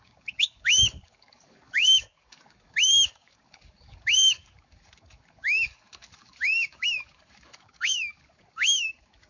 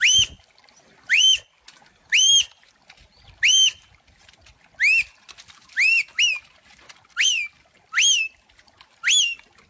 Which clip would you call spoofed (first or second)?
first